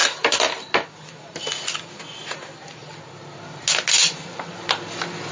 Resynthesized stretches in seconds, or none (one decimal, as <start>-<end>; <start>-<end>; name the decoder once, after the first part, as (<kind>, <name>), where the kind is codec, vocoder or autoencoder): 2.2-3.6 (vocoder, BigVGAN v2); 4.0-4.7